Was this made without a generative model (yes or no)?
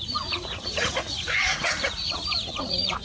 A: no